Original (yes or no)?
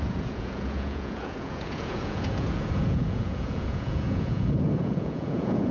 no